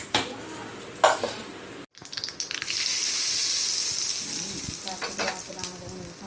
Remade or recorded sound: recorded